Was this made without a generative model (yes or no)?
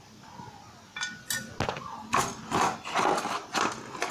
yes